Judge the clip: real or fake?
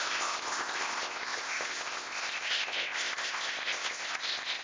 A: fake